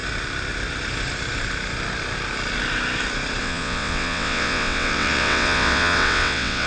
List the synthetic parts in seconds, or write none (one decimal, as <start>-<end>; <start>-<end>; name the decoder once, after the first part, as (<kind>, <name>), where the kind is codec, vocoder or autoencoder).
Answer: 3.4-6.7 (vocoder, WaveNeXt)